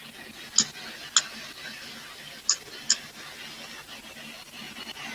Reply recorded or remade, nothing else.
recorded